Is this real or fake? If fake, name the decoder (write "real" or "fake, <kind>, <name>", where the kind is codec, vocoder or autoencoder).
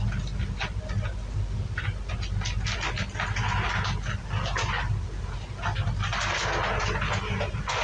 real